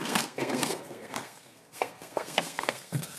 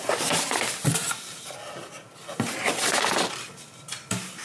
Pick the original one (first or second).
second